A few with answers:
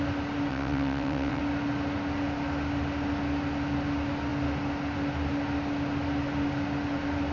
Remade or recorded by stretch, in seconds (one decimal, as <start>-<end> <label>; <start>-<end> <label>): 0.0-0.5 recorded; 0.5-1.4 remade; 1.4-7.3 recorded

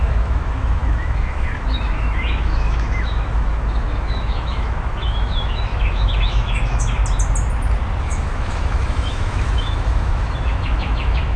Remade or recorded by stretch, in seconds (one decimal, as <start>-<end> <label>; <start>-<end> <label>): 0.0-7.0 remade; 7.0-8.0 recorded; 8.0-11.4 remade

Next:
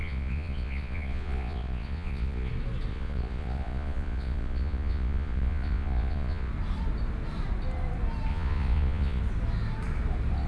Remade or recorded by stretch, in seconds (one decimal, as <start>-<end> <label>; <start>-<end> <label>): 0.0-2.5 remade; 2.5-2.9 recorded; 2.9-6.5 remade; 6.5-8.3 recorded; 8.3-9.2 remade; 9.2-10.5 recorded

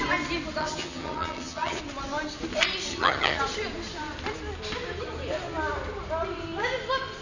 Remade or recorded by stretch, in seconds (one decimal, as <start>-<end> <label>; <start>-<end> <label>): 0.0-0.6 recorded; 0.6-1.8 remade; 1.8-2.9 recorded; 2.9-3.4 remade; 3.4-7.2 recorded